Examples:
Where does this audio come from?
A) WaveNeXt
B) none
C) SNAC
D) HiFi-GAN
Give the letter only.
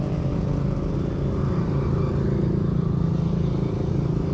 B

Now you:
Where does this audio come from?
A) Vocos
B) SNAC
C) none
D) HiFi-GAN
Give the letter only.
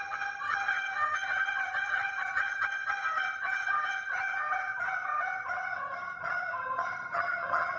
D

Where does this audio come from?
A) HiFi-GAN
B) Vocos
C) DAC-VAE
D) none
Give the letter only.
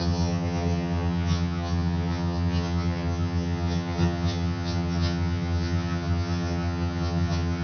A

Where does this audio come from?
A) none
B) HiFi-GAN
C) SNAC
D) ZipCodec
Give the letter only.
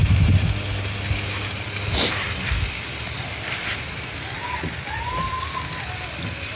A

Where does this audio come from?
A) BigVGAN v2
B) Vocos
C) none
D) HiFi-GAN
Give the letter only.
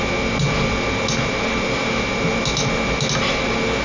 C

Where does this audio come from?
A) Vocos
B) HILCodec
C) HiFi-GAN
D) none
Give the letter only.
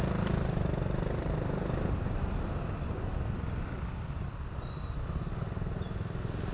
D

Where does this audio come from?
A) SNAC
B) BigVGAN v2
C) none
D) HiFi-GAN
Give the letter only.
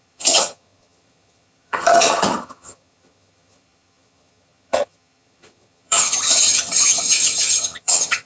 D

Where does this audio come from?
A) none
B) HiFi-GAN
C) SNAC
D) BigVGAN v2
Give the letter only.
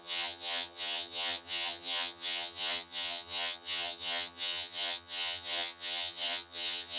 B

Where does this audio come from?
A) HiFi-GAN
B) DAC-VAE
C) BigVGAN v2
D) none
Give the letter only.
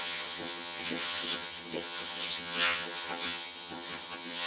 A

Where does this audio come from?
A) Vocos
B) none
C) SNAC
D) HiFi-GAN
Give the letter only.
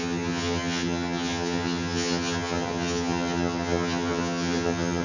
D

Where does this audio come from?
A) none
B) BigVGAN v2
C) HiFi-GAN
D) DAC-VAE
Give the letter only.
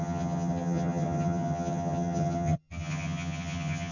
C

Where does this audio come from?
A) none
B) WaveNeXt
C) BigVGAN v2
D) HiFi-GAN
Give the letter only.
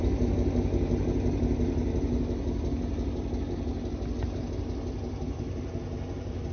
A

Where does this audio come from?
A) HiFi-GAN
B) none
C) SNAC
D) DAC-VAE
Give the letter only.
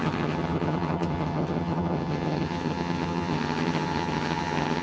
A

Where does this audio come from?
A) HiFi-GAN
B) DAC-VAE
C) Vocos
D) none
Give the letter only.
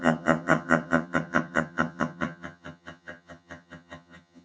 A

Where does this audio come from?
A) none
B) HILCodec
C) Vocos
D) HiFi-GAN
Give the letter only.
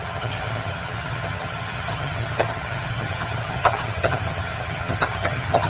D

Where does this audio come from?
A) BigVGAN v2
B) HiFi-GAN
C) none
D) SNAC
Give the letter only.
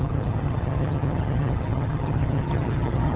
B